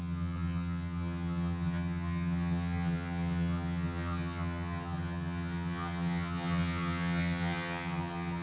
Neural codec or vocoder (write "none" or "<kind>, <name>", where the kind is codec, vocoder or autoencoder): vocoder, HiFi-GAN